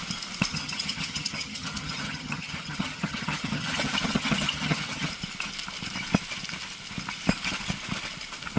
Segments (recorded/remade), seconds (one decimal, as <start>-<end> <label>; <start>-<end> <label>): 0.0-0.5 recorded; 0.5-5.1 remade; 5.1-8.6 recorded